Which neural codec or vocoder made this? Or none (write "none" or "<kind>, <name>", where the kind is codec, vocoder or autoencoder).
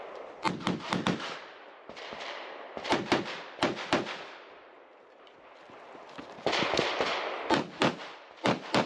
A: none